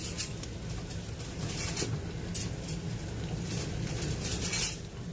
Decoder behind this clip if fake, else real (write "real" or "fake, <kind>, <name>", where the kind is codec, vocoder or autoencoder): real